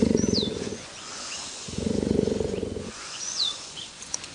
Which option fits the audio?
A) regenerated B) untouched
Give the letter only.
A